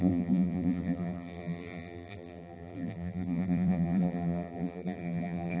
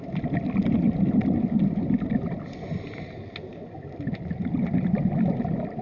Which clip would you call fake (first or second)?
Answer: first